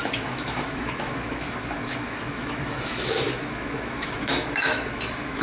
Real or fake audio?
fake